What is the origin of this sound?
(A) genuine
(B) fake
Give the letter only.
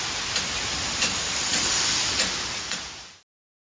A